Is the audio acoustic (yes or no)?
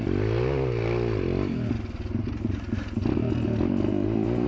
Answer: yes